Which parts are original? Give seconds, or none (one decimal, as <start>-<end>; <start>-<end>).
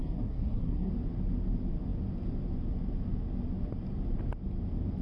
0.9-5.0